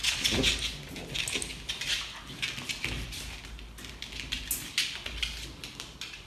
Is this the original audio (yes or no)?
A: yes